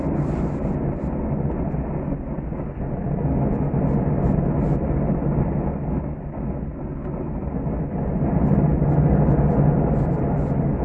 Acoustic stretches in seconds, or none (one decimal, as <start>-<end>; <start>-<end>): 0.0-10.8